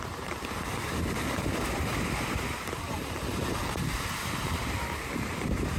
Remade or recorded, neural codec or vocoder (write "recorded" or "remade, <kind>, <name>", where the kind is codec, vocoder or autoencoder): remade, vocoder, BigVGAN v2